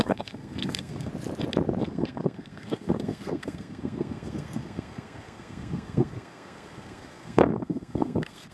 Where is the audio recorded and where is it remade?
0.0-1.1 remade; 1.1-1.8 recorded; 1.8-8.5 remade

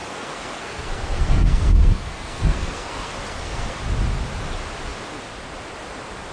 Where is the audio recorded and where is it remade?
0.0-3.8 remade; 3.8-6.3 recorded

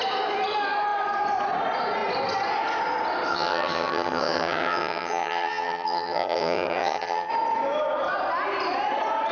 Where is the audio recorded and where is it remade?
0.0-3.3 recorded; 3.3-7.3 remade; 7.3-9.3 recorded

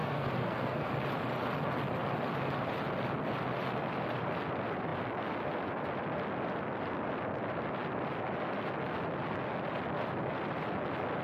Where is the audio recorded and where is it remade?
0.0-0.9 remade; 0.9-11.2 recorded

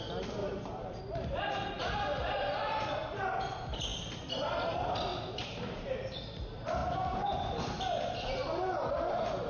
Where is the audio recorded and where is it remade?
0.0-0.4 remade; 0.4-1.4 recorded; 1.4-5.1 remade; 5.1-5.9 recorded; 5.9-6.8 remade; 6.8-8.9 recorded; 8.9-9.5 remade